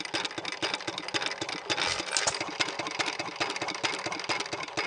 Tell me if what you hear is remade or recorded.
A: recorded